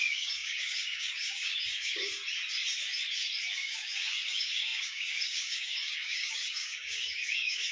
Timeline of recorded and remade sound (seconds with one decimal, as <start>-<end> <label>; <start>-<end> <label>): 0.0-2.2 remade; 2.2-3.5 recorded; 3.5-7.7 remade